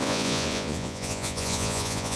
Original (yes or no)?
no